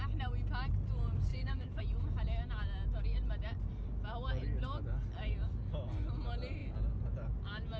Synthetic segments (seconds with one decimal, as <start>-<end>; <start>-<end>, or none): 1.3-1.8

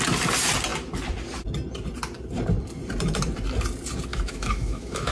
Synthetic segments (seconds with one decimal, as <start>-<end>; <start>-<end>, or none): 4.1-5.1

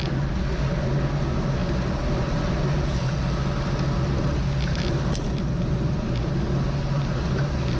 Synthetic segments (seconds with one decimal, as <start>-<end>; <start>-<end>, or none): none